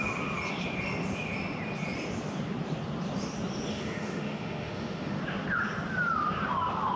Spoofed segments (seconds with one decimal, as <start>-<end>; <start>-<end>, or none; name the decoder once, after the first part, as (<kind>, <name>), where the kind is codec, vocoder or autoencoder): 3.7-5.2 (autoencoder, DAC-VAE)

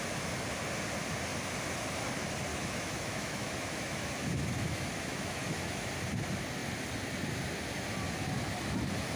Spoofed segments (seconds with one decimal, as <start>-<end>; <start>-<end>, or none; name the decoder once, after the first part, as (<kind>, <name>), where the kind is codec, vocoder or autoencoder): 2.5-5.9 (autoencoder, DAC-VAE)